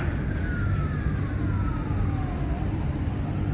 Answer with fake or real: real